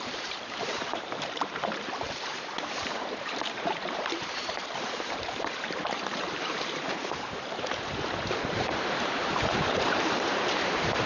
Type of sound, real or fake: fake